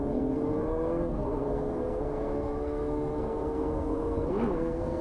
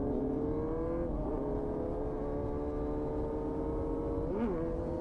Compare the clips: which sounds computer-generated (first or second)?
first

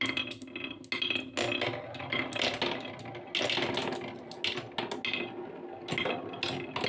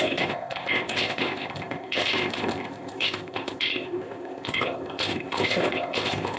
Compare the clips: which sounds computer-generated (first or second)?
second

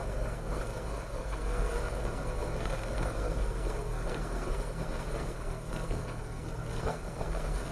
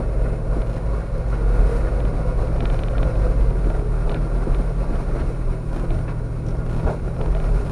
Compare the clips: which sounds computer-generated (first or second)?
first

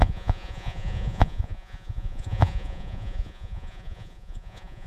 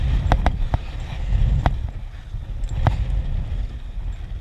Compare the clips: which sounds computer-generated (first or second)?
first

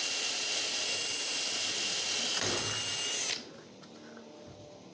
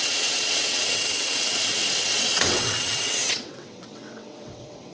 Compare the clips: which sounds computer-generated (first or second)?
second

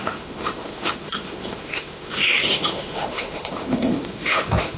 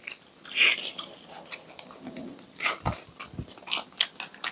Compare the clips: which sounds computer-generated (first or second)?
first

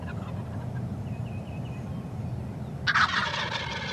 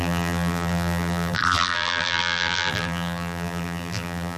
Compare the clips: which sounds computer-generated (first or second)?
second